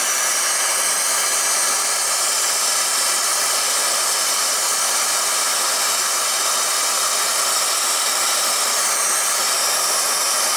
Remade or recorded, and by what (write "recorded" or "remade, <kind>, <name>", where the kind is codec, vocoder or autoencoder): recorded